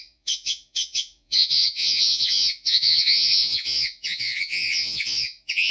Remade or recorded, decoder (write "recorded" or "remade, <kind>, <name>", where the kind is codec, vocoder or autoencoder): remade, vocoder, Vocos